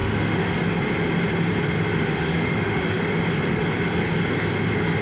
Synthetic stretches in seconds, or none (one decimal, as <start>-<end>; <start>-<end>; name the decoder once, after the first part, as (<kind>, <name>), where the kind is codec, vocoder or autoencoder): 0.0-0.5 (autoencoder, DAC-VAE); 2.0-3.0